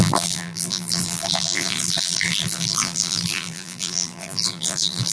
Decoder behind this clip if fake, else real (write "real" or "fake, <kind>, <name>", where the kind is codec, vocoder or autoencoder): fake, vocoder, BigVGAN v2